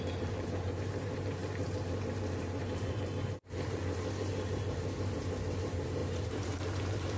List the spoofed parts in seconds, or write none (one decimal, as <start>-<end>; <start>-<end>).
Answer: 0.0-7.2